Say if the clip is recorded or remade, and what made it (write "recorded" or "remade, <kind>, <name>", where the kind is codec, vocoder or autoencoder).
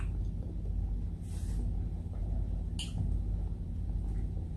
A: recorded